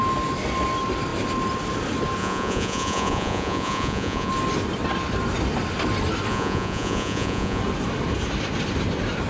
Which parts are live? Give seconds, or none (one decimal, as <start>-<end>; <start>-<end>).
0.0-2.2; 4.3-6.3; 7.6-9.3